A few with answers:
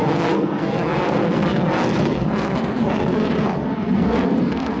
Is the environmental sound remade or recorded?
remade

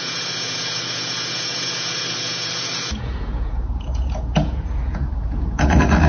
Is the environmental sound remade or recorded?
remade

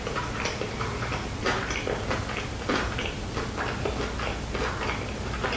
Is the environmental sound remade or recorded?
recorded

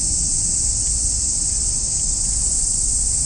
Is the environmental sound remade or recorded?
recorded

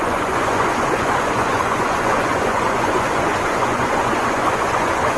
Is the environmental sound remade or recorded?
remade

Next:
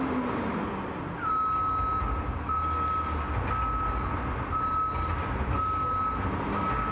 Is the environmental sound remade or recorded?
recorded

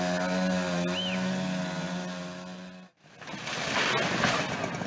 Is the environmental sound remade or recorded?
recorded